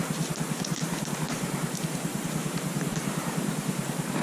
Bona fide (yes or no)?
no